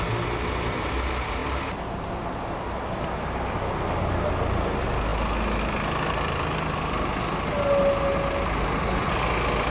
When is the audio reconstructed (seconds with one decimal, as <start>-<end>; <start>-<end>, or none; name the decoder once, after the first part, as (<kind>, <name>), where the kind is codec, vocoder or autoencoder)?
none